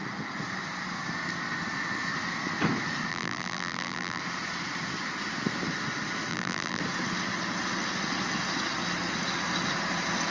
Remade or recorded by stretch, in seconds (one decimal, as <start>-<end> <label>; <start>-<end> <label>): 0.0-3.1 recorded; 3.1-4.2 remade; 4.2-6.3 recorded; 6.3-6.8 remade; 6.8-10.3 recorded